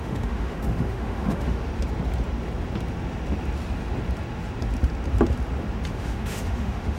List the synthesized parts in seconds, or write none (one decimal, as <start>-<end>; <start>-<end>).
0.0-1.7; 5.9-7.0